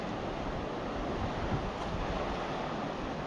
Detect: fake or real real